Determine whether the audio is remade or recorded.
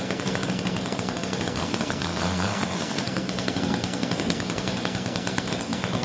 remade